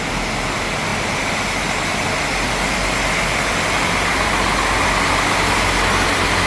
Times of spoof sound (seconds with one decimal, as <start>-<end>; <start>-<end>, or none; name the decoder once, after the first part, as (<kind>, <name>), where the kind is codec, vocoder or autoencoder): none